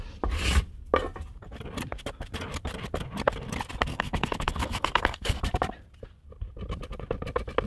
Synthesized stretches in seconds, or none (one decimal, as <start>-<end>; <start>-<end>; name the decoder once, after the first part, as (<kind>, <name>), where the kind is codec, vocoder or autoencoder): 3.9-5.4 (codec, SNAC)